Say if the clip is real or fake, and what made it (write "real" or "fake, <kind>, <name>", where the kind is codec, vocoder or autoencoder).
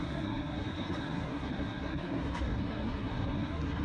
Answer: fake, codec, SNAC